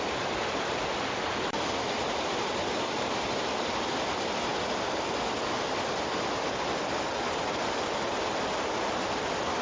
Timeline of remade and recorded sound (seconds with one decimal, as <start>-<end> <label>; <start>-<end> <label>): 0.0-9.6 recorded